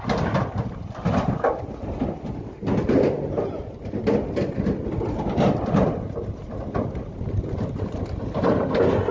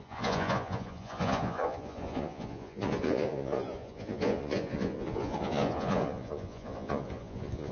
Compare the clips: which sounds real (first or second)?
first